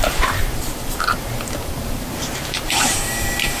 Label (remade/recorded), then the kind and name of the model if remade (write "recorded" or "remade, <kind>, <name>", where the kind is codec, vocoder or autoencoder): remade, vocoder, BigVGAN v2